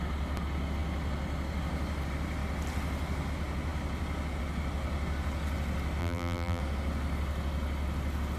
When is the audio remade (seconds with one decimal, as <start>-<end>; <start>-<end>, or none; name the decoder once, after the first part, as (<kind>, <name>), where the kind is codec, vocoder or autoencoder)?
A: 6.0-6.6 (vocoder, BigVGAN v2)